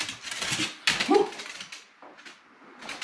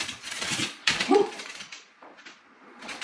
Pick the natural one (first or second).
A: first